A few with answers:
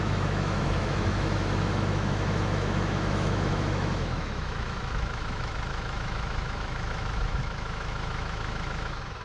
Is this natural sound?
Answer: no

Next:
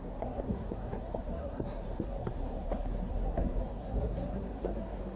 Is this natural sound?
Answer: no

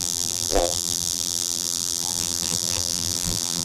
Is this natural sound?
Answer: no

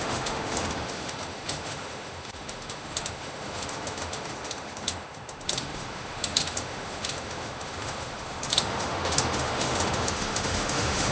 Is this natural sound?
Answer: no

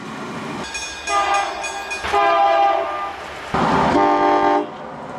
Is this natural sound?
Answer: yes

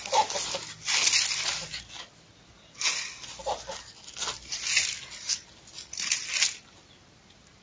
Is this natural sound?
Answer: yes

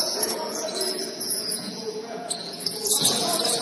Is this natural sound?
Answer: no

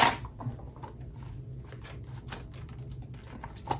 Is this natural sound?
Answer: yes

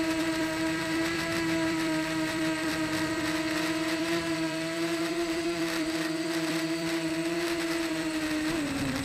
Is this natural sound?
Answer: no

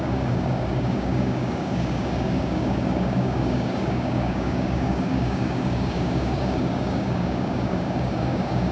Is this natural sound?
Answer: no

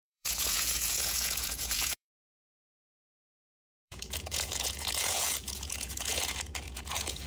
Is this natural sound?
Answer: no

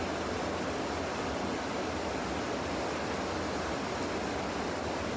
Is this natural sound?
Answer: yes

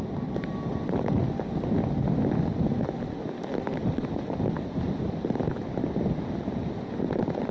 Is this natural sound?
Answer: yes